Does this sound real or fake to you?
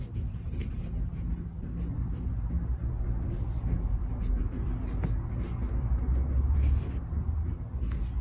real